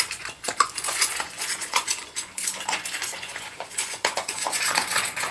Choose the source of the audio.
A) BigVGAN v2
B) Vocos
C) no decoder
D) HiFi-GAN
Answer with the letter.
B